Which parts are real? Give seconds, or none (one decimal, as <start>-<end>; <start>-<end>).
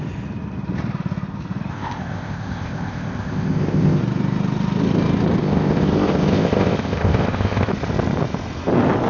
0.0-1.7; 4.0-5.4; 7.7-9.1